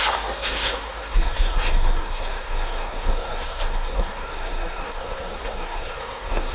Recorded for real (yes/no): no